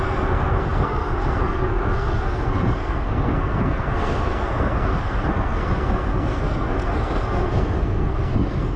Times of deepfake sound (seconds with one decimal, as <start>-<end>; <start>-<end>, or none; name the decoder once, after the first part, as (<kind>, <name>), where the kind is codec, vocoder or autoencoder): 0.0-8.8 (codec, SNAC)